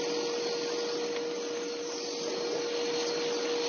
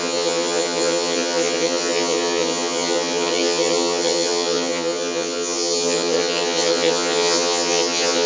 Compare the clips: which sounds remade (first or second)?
second